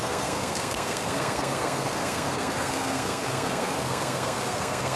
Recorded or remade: remade